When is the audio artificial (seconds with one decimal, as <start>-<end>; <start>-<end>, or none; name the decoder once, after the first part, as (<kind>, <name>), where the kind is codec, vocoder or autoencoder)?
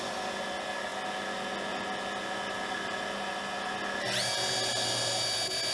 none